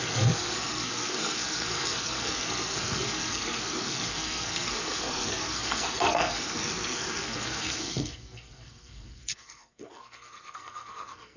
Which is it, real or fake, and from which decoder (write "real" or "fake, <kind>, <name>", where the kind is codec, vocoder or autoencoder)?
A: fake, codec, SNAC